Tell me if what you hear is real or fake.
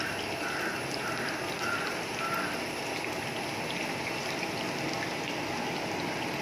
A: real